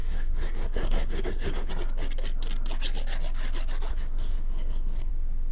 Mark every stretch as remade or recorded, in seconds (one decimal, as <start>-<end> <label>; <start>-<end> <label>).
0.0-1.7 remade; 1.7-3.9 recorded; 3.9-5.1 remade; 5.1-5.5 recorded

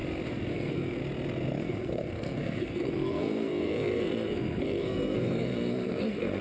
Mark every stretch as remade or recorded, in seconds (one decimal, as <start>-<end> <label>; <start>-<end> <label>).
0.0-0.5 recorded; 0.5-1.0 remade; 1.0-1.6 recorded; 1.6-6.4 remade

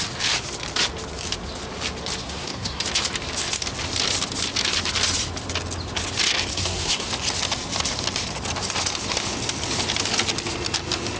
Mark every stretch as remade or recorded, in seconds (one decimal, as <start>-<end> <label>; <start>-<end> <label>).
0.0-2.2 recorded; 2.2-2.8 remade; 2.8-6.5 recorded; 6.5-7.1 remade; 7.1-11.2 recorded

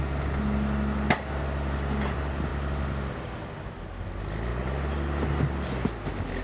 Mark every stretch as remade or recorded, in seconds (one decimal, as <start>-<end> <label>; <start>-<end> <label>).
0.0-6.4 recorded

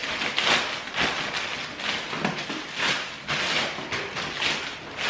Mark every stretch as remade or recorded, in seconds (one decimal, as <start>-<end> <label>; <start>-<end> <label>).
0.0-5.1 recorded